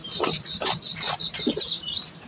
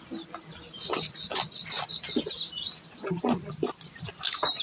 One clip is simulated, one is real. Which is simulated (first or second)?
first